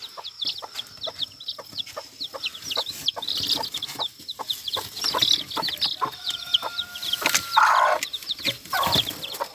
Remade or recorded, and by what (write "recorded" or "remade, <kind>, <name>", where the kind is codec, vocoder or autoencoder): recorded